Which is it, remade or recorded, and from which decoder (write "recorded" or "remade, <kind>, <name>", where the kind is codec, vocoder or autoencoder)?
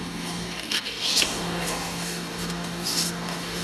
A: remade, codec, DAC